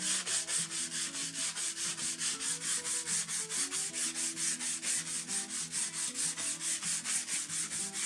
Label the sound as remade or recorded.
recorded